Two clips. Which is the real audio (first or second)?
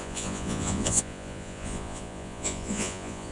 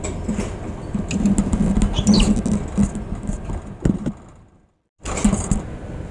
second